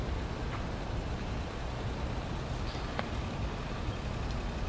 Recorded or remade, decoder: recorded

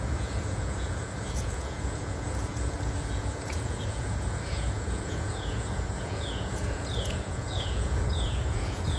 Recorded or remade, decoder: remade, vocoder, Vocos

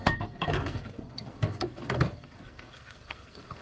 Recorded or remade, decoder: remade, codec, SNAC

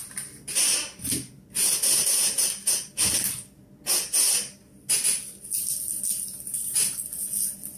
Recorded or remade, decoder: recorded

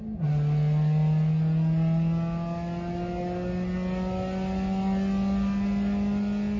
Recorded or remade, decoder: recorded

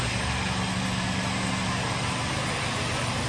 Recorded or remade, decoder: recorded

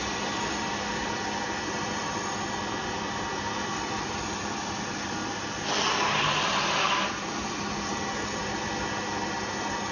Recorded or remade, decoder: recorded